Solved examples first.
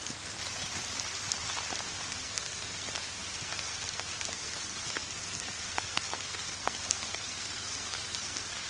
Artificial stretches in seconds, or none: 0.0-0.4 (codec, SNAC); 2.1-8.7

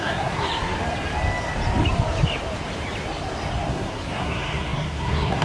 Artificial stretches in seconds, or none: 0.0-0.5 (codec, SNAC); 3.7-5.4

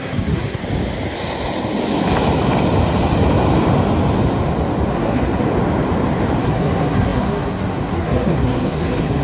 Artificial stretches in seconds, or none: 0.0-0.6 (codec, SNAC); 4.9-5.4; 6.4-9.2